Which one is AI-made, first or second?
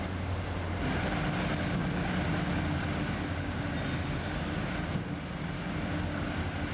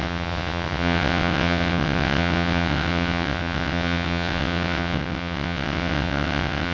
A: second